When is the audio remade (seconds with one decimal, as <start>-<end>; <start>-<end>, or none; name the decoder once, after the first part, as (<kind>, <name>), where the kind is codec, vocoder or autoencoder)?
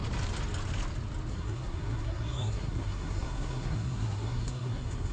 1.3-5.1 (codec, SNAC)